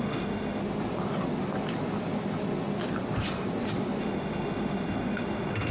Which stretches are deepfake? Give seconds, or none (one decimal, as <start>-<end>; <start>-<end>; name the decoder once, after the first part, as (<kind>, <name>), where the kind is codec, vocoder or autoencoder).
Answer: 0.0-0.6 (autoencoder, DAC-VAE); 4.0-5.7

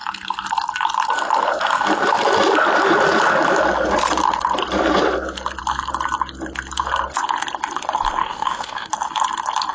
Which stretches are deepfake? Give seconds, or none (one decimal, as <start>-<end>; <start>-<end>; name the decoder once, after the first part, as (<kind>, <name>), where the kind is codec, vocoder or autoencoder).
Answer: 8.2-8.9 (autoencoder, DAC-VAE)

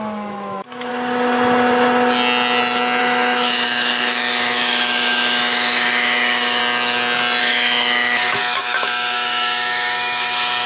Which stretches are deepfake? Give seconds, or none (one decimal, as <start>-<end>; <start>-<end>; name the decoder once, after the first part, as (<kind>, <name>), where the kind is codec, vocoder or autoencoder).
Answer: 0.0-0.9 (autoencoder, DAC-VAE); 3.0-6.6; 7.4-10.7

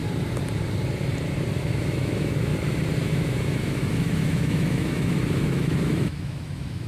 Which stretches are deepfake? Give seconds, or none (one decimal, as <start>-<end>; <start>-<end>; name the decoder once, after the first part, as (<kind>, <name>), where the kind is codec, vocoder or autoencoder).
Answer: 1.6-2.5 (autoencoder, DAC-VAE); 3.0-6.9

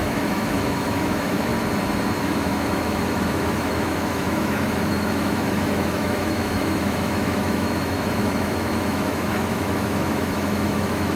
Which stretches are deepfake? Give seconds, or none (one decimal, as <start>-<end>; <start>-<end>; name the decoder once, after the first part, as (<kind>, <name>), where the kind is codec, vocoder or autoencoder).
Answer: 0.0-1.5 (autoencoder, DAC-VAE); 2.2-11.2

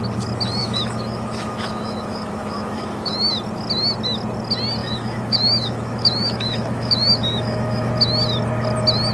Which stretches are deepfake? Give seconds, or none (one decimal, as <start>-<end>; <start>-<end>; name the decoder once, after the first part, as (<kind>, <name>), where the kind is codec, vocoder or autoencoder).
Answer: 0.6-3.3 (autoencoder, DAC-VAE); 4.8-7.9

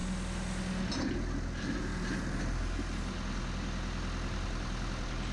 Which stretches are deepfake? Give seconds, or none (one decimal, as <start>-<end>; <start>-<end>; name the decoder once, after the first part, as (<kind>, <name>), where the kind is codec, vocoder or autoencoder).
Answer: none

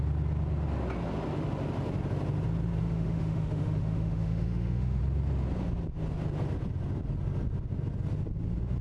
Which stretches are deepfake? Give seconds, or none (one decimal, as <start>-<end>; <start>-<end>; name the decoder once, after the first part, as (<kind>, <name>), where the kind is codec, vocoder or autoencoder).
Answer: 2.8-5.0 (autoencoder, DAC-VAE)